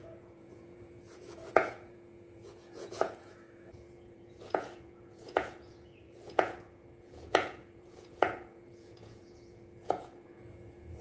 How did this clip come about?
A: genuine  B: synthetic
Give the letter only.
B